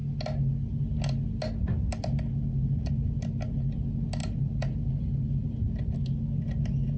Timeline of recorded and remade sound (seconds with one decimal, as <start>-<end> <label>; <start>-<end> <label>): 0.0-4.2 recorded; 4.2-5.5 remade; 5.5-7.0 recorded